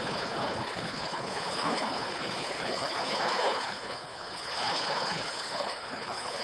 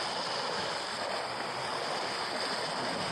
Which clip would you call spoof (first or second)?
first